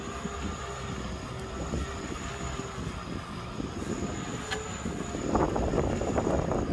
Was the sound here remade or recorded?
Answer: recorded